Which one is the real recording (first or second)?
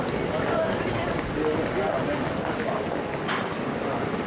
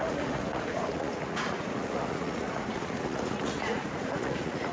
first